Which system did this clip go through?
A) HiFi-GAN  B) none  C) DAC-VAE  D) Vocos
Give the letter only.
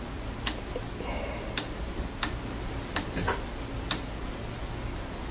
B